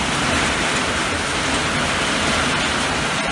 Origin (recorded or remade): recorded